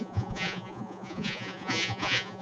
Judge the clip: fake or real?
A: fake